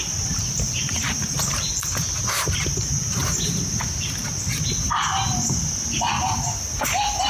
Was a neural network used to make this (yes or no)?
no